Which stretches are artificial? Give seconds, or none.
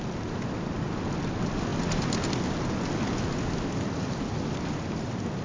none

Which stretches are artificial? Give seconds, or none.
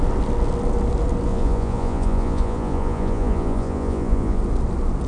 1.3-4.4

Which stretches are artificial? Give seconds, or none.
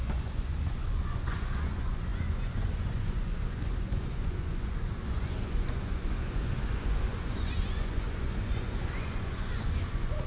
0.0-10.3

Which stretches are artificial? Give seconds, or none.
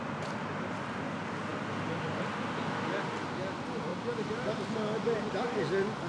none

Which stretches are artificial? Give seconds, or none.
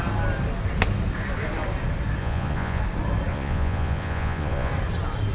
2.2-2.8; 3.3-4.7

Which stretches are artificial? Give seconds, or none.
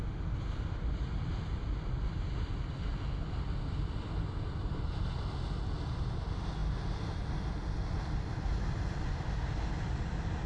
none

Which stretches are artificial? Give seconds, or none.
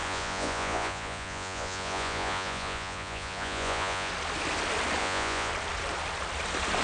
0.0-4.1; 5.0-5.5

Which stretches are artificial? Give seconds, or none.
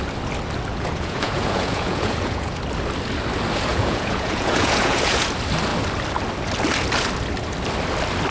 0.7-2.6; 3.7-5.3